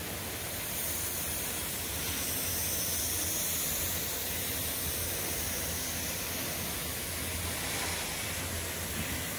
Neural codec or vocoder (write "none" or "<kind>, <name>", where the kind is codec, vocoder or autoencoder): none